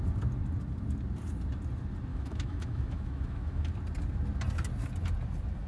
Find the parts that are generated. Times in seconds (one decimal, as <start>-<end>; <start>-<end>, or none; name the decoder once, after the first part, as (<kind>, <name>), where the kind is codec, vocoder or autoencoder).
2.1-3.7 (autoencoder, DAC-VAE)